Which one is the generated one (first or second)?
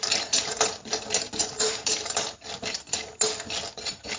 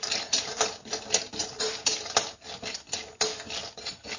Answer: first